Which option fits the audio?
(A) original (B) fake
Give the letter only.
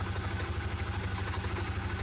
A